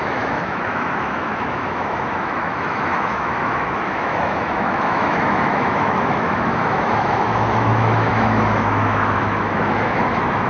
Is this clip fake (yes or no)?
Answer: yes